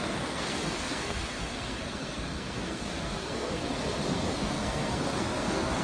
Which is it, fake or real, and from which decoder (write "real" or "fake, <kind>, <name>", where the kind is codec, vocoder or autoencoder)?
fake, codec, SNAC